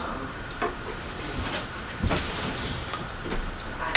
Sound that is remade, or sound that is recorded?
remade